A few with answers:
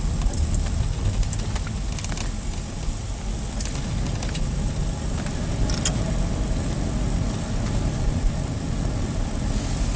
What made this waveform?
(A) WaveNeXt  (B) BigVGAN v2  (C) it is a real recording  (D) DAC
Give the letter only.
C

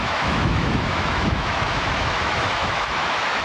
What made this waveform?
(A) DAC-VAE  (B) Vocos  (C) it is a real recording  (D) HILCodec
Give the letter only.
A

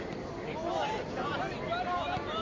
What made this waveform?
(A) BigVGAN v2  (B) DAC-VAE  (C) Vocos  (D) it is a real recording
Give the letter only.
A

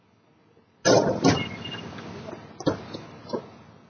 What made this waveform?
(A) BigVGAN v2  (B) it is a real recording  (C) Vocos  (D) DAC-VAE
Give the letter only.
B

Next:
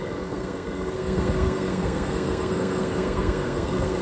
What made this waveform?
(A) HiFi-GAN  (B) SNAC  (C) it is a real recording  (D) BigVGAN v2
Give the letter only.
B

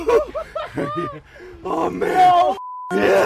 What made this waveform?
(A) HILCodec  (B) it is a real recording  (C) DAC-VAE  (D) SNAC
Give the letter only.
B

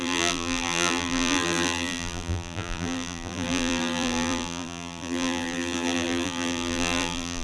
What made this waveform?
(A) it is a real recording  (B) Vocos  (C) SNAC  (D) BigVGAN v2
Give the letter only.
D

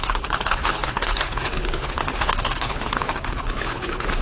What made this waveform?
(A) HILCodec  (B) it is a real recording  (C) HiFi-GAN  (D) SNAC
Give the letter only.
A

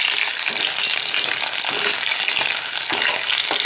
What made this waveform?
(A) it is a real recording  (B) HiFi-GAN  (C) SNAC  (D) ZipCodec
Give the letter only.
A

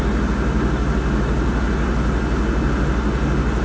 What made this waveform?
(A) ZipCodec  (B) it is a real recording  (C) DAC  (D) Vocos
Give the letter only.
B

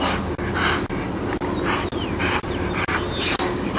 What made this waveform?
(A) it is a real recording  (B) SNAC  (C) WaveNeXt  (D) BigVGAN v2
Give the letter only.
A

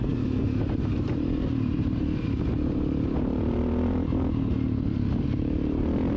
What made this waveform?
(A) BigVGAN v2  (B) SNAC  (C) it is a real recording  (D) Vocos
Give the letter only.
A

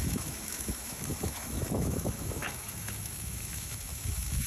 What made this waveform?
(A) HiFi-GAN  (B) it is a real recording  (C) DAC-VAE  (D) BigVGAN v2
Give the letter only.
C